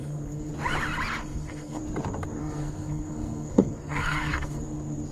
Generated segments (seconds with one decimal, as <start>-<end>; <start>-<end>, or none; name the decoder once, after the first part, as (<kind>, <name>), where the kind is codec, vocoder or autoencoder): 0.0-0.5 (codec, SNAC); 1.2-1.8; 2.4-4.6